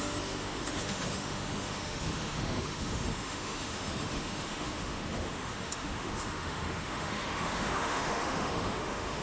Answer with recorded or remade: remade